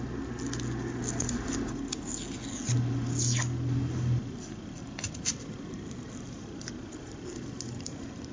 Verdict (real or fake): real